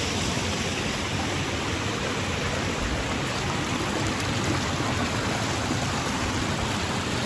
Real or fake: real